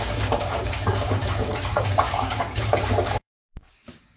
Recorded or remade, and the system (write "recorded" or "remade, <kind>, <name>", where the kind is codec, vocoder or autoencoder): remade, codec, DAC